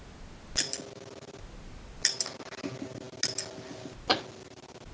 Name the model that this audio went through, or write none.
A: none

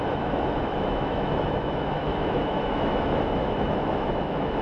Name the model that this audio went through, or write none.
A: autoencoder, DAC-VAE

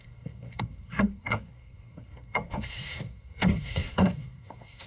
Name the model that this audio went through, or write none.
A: codec, SNAC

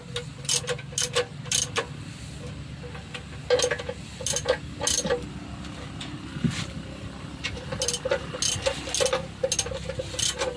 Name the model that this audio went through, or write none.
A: none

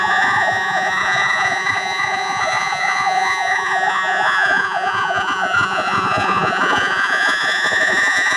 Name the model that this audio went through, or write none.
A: vocoder, Vocos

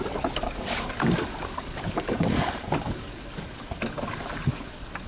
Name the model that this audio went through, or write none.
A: codec, DAC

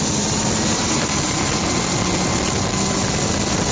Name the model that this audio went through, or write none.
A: none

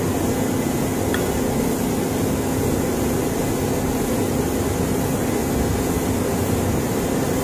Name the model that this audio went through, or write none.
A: none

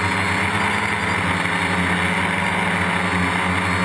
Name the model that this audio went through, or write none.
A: none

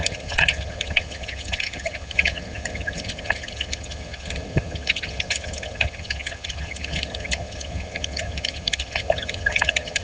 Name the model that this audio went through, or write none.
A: vocoder, HiFi-GAN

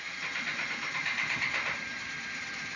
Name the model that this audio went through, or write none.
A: none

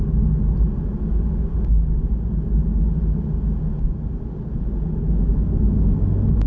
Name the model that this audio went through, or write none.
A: none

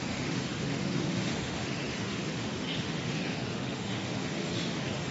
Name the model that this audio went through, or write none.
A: autoencoder, DAC-VAE